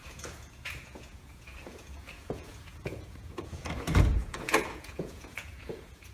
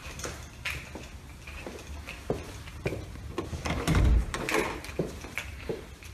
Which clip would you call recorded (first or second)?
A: second